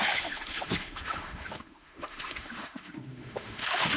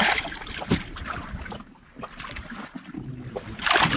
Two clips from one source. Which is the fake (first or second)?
first